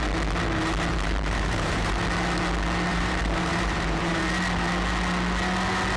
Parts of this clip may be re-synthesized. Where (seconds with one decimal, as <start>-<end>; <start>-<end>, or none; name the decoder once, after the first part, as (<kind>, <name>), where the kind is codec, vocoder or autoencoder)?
0.9-2.0 (vocoder, BigVGAN v2); 2.9-4.2